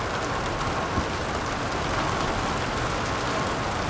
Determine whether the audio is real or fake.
real